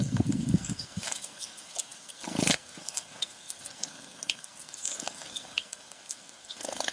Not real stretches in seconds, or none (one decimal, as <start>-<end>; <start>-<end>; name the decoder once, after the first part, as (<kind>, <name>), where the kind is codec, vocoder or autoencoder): 0.0-6.9 (codec, SNAC)